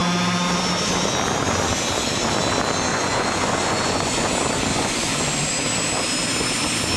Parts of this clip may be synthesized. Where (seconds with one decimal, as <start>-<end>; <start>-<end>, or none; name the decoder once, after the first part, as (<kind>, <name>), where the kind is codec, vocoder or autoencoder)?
2.9-4.3 (vocoder, Vocos); 4.7-5.5